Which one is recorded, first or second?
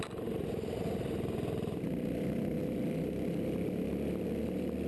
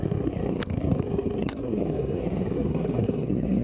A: first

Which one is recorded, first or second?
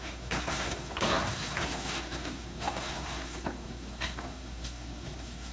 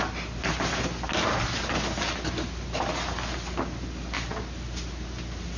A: second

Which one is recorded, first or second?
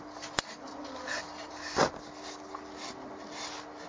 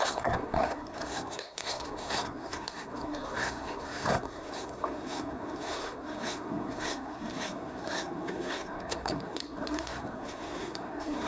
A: first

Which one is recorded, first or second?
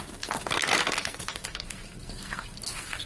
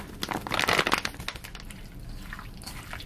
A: second